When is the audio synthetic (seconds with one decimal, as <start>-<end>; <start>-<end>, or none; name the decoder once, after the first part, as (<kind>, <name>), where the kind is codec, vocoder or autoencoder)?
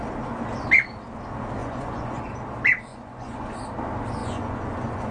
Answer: 1.6-2.3 (vocoder, Vocos); 2.9-3.6; 4.2-5.1